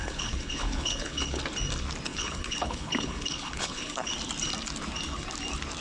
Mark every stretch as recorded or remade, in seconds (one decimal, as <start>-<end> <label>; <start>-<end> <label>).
0.0-1.4 remade; 1.4-2.1 recorded; 2.1-4.1 remade; 4.1-5.8 recorded